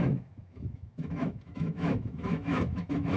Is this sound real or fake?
fake